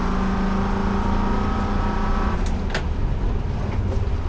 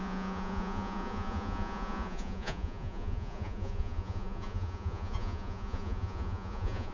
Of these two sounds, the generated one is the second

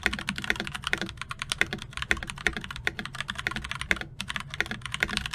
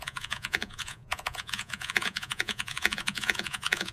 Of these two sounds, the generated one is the second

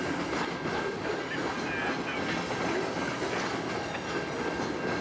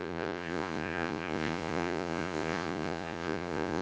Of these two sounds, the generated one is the second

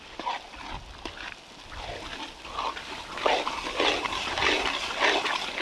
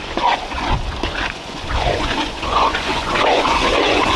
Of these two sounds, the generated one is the second